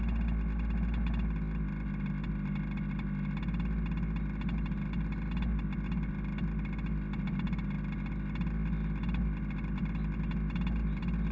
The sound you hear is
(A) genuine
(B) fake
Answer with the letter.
A